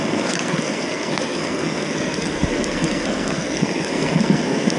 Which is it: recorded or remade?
remade